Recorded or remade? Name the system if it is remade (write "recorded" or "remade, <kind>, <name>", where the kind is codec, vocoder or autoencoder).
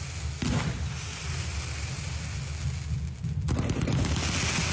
recorded